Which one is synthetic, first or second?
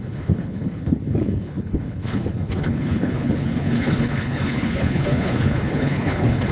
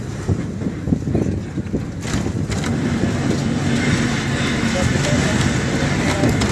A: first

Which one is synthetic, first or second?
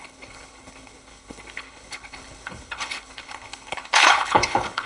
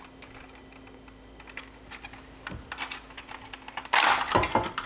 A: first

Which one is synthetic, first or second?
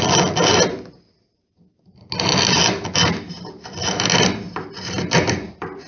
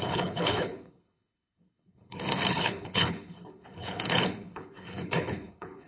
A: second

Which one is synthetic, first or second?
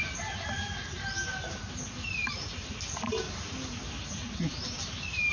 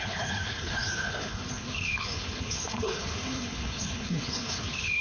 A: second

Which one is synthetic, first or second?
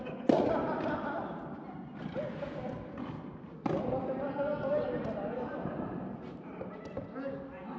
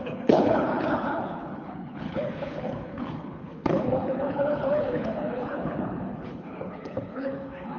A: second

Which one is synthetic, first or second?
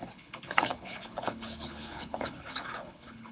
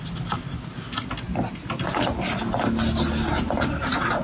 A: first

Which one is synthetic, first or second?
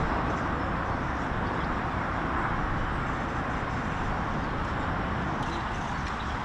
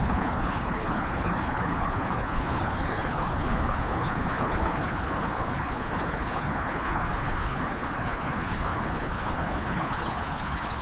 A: second